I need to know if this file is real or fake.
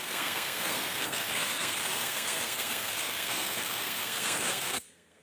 fake